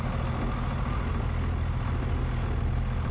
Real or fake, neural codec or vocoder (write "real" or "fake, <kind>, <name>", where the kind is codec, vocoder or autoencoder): real